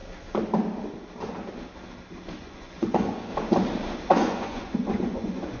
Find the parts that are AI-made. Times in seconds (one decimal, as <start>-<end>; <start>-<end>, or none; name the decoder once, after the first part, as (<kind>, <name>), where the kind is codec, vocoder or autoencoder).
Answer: 2.4-3.3 (vocoder, Vocos); 4.1-5.6